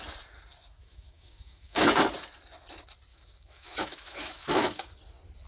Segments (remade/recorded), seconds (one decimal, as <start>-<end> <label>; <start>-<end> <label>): 0.0-0.8 recorded; 0.8-1.8 remade; 1.8-3.1 recorded; 3.1-4.9 remade; 4.9-5.5 recorded